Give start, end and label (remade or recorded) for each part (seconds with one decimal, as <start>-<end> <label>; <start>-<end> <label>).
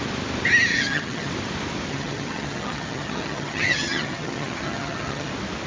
0.0-0.7 recorded; 0.7-1.3 remade; 1.3-1.9 recorded; 1.9-5.3 remade; 5.3-5.7 recorded